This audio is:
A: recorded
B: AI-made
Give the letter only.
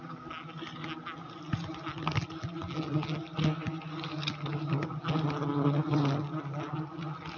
A